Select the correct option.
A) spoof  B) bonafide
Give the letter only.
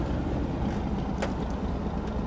B